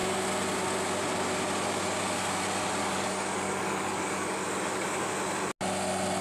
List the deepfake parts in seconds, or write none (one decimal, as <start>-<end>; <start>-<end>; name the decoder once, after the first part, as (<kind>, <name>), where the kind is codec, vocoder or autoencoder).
2.8-5.1 (codec, DAC)